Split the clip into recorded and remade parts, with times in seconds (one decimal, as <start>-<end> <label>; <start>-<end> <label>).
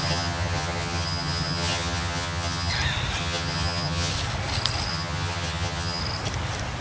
0.0-2.7 remade; 2.7-3.2 recorded; 3.2-4.1 remade; 4.1-4.9 recorded; 4.9-6.0 remade; 6.0-6.8 recorded